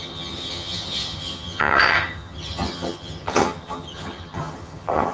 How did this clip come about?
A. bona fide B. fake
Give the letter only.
B